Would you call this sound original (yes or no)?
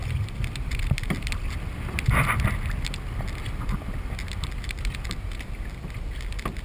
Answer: yes